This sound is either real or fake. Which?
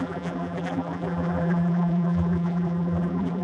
fake